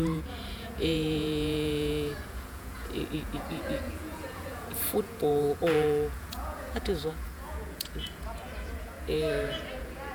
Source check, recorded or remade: remade